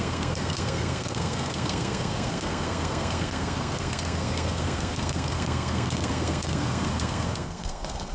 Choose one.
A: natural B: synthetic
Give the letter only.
B